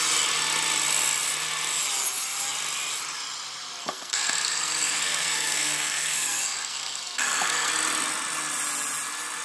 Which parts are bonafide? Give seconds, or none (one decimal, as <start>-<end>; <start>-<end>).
0.0-3.8; 7.7-9.4